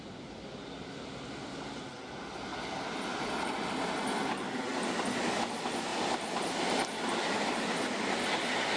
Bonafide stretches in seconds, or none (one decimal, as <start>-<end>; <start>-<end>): 0.0-8.8